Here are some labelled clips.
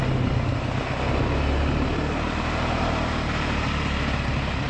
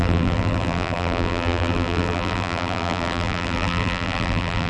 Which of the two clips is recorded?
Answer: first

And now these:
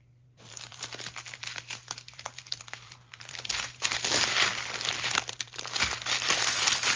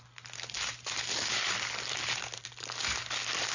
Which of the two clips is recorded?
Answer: second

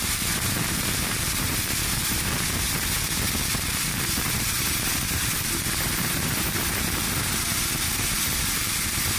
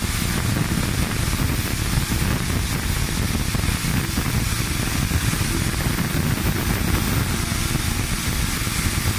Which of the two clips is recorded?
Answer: second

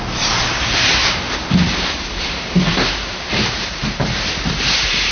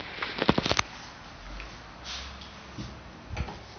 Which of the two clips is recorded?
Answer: second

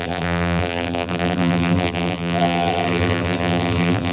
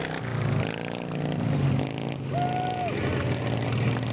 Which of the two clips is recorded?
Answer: second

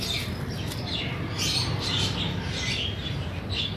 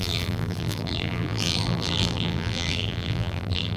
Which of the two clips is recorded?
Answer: first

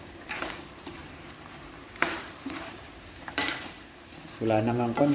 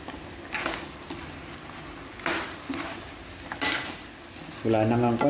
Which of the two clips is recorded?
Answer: second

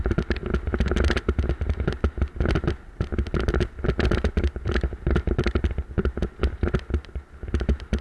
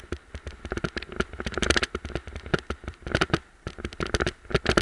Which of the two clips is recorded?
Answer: first